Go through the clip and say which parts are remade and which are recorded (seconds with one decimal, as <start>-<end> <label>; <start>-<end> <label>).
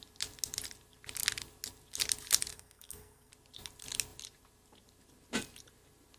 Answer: 0.0-2.5 recorded; 2.5-3.3 remade; 3.3-6.2 recorded